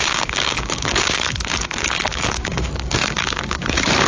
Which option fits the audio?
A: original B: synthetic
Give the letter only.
B